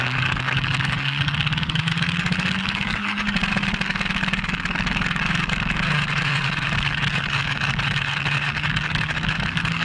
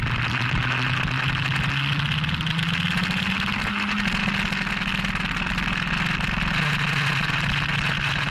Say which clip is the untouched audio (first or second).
second